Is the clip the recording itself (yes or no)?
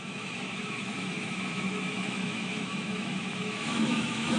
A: no